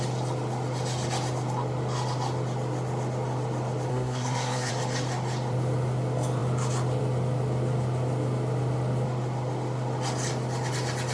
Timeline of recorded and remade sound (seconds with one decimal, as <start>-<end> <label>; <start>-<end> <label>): 0.0-3.9 recorded; 3.9-4.7 remade; 4.7-11.1 recorded